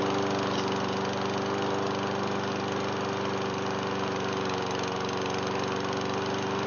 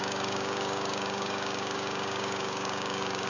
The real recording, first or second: first